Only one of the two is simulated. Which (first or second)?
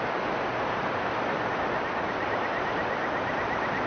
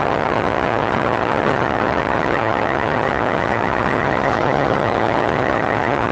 second